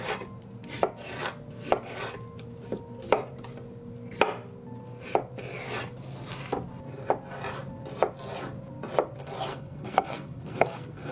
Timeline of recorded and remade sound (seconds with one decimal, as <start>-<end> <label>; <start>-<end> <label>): 0.0-9.5 recorded; 9.5-11.1 remade